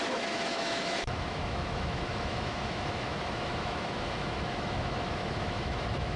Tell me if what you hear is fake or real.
fake